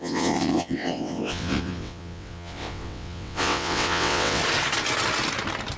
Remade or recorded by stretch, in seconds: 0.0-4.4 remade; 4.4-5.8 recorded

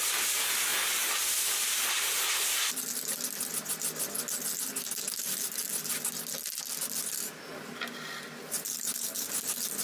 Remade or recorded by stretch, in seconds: 0.0-0.7 recorded; 0.7-2.3 remade; 2.3-5.2 recorded; 5.2-5.9 remade; 5.9-9.8 recorded